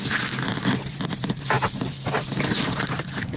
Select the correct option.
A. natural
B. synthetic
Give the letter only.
A